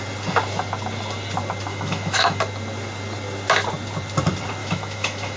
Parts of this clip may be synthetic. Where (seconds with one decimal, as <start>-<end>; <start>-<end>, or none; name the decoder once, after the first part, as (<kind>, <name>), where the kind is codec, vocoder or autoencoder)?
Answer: 1.7-2.4 (autoencoder, DAC-VAE); 4.6-5.4